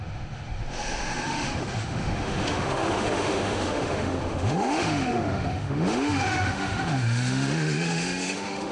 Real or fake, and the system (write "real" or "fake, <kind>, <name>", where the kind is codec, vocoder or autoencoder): fake, autoencoder, DAC-VAE